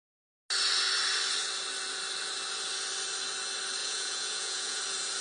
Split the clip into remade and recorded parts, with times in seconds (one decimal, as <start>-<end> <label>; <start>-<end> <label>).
0.0-3.8 recorded; 3.8-4.8 remade; 4.8-5.2 recorded